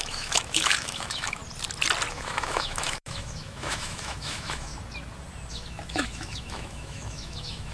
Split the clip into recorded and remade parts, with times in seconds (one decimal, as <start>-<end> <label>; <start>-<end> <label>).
0.0-1.4 remade; 1.4-2.1 recorded; 2.1-4.7 remade; 4.7-5.5 recorded; 5.5-7.7 remade